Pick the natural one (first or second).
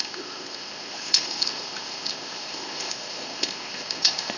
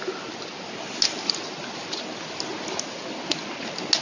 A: second